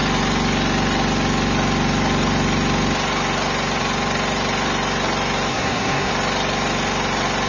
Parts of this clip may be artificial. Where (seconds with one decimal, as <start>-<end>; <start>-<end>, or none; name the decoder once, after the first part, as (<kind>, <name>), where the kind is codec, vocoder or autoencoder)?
5.5-6.1 (codec, SNAC)